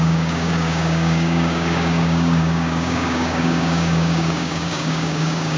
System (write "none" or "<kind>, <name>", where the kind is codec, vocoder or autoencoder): codec, DAC